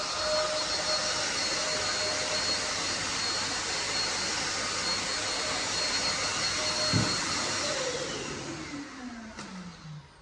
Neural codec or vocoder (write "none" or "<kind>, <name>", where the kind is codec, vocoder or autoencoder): none